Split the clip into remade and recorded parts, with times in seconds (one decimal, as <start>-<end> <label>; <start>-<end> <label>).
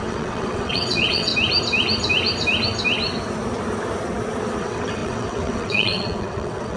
0.0-1.3 remade; 1.3-4.6 recorded; 4.6-6.8 remade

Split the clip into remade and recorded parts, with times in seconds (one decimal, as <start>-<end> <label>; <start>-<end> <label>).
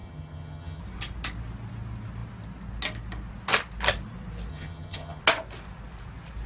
0.0-0.8 remade; 0.8-4.5 recorded; 4.5-5.2 remade; 5.2-6.5 recorded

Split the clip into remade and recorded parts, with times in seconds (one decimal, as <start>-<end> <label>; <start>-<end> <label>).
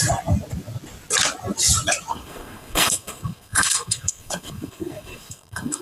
0.0-2.1 recorded; 2.1-5.8 remade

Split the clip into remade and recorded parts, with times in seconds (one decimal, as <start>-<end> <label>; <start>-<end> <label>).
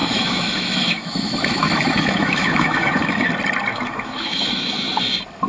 0.0-3.3 remade; 3.3-3.7 recorded; 3.7-4.9 remade; 4.9-5.5 recorded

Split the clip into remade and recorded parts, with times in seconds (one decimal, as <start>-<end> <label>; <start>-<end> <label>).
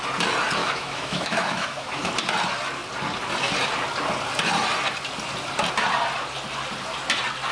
0.0-0.6 recorded; 0.6-2.1 remade; 2.1-7.5 recorded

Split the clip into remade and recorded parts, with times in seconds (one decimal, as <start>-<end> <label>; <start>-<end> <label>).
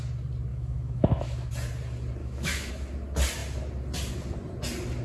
0.0-0.5 recorded; 0.5-1.5 remade; 1.5-2.2 recorded; 2.2-2.7 remade; 2.7-5.0 recorded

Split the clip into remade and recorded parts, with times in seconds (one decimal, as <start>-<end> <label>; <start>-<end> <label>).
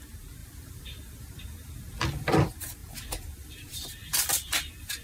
0.0-2.8 remade; 2.8-3.3 recorded; 3.3-5.0 remade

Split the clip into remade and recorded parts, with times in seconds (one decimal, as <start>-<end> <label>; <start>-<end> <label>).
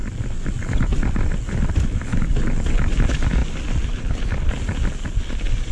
0.0-5.7 recorded